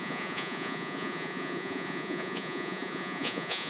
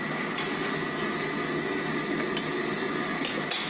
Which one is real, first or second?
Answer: second